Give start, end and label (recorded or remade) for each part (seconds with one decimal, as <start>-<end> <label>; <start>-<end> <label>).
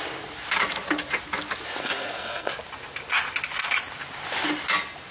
0.0-1.8 recorded; 1.8-2.5 remade; 2.5-5.1 recorded